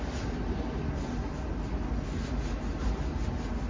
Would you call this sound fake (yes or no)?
no